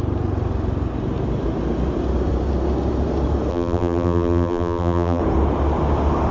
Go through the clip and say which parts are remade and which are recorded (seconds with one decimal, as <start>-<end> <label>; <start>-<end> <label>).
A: 0.0-3.5 recorded; 3.5-5.2 remade; 5.2-6.3 recorded